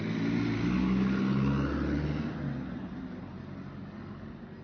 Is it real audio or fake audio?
real